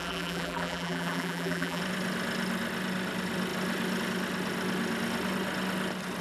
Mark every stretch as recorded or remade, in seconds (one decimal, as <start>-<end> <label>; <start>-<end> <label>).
0.0-1.8 remade; 1.8-6.2 recorded